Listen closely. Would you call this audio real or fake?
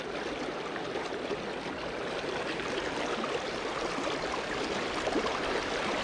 real